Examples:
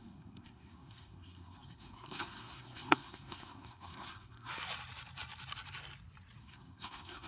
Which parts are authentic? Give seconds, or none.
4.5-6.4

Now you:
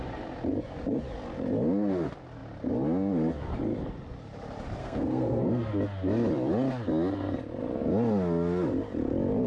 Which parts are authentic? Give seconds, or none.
0.0-4.8; 5.7-9.5

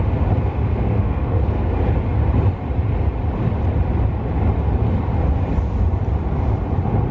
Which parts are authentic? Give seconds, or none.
0.0-0.4; 1.7-7.1

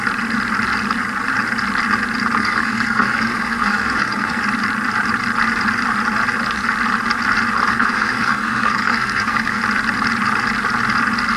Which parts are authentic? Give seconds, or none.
0.0-2.4; 4.4-7.7; 9.6-11.4

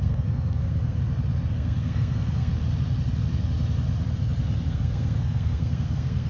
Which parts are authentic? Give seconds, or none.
1.0-1.5; 2.5-4.7

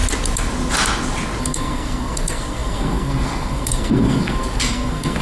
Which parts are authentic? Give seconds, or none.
0.0-1.4